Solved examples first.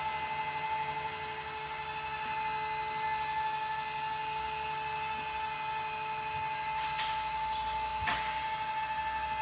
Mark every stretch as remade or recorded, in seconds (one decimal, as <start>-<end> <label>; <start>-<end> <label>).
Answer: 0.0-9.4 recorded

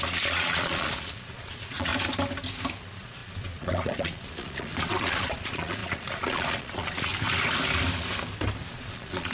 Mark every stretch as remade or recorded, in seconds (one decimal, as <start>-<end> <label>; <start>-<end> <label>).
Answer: 0.0-1.9 remade; 1.9-2.8 recorded; 2.8-7.1 remade; 7.1-8.7 recorded; 8.7-9.3 remade

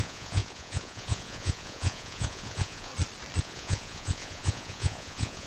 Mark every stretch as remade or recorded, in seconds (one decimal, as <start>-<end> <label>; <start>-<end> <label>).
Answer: 0.0-2.9 remade; 2.9-3.4 recorded; 3.4-5.5 remade